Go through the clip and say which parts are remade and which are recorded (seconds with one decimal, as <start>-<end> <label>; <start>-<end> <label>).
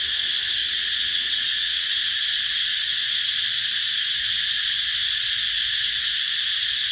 0.0-0.6 recorded; 0.6-1.9 remade; 1.9-6.9 recorded